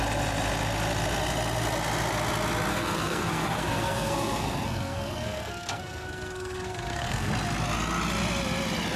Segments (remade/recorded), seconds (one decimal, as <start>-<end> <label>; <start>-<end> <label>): 0.0-2.7 recorded; 2.7-7.3 remade; 7.3-9.0 recorded

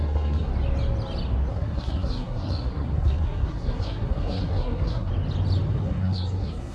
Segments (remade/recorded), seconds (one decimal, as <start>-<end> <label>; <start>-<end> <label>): 0.0-0.5 remade; 0.5-1.5 recorded; 1.5-5.1 remade; 5.1-5.7 recorded; 5.7-6.7 remade

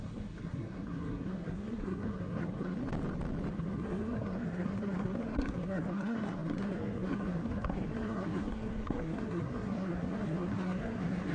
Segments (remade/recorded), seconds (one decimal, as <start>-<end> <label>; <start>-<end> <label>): 0.0-2.8 remade; 2.8-3.5 recorded; 3.5-11.3 remade

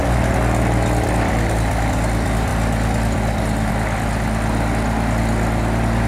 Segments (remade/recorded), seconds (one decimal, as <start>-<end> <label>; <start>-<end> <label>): 0.0-6.1 recorded